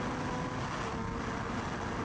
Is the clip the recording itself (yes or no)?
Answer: yes